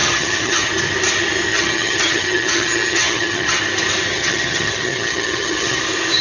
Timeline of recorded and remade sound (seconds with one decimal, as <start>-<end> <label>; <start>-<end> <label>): 0.0-0.7 remade; 0.7-1.5 recorded; 1.5-3.6 remade; 3.6-4.1 recorded; 4.1-5.8 remade; 5.8-6.2 recorded